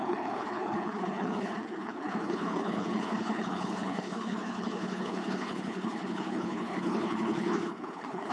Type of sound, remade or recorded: remade